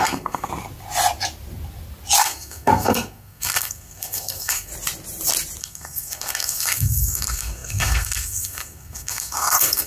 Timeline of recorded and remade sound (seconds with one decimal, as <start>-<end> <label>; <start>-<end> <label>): 0.0-0.5 remade; 0.5-2.2 recorded; 2.2-4.7 remade; 4.7-5.6 recorded; 5.6-9.9 remade